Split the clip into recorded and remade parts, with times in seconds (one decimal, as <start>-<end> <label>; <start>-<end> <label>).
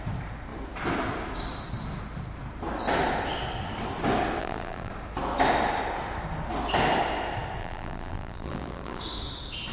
0.0-4.4 recorded; 4.4-4.9 remade; 4.9-7.6 recorded; 7.6-9.0 remade; 9.0-9.7 recorded